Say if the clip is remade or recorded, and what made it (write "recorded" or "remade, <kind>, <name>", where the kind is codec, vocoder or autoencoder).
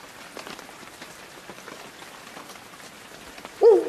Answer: recorded